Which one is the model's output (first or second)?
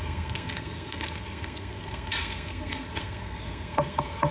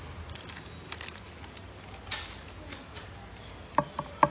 first